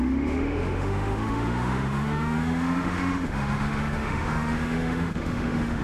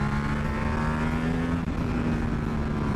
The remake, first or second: first